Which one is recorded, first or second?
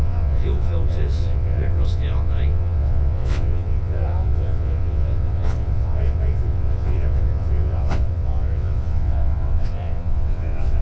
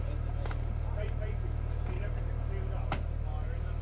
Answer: second